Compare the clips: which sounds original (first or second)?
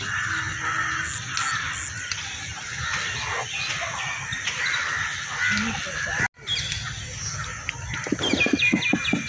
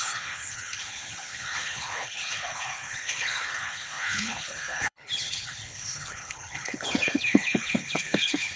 first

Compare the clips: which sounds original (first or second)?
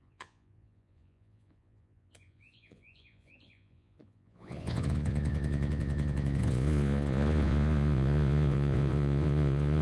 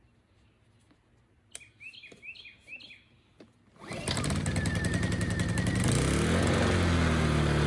second